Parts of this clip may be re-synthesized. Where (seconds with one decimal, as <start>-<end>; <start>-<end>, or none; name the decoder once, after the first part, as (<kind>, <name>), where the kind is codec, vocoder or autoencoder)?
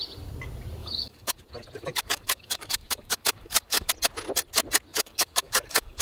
0.8-1.4 (codec, DAC); 1.9-3.9; 4.9-6.0